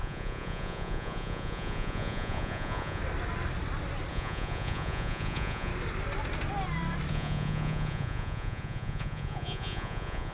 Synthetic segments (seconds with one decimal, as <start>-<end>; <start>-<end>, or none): 0.0-3.0; 4.1-5.7; 7.1-10.3